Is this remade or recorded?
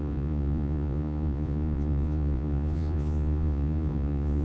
remade